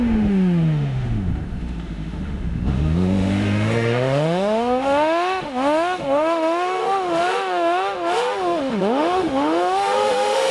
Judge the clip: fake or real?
fake